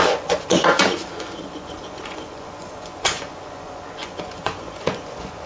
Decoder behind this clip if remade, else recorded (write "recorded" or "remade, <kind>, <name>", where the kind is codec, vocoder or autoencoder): remade, vocoder, Vocos